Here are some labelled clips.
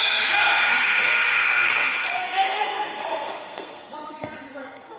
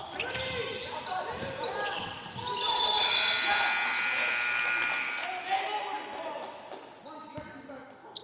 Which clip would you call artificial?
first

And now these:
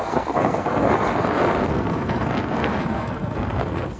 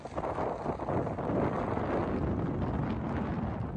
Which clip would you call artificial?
first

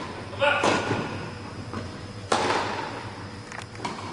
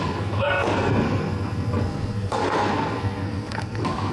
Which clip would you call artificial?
second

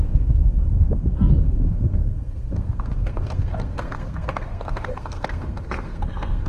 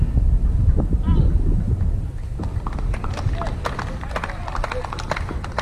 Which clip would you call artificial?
first